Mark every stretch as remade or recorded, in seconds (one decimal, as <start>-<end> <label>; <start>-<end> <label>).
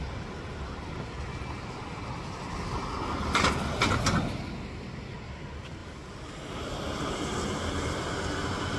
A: 0.0-8.8 recorded